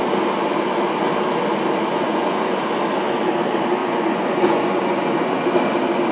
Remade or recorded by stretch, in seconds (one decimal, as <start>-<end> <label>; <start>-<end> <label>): 0.0-1.9 recorded; 1.9-2.6 remade; 2.6-3.8 recorded; 3.8-5.4 remade; 5.4-6.1 recorded